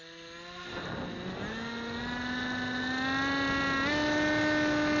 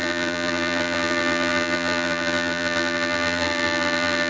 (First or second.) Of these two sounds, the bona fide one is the first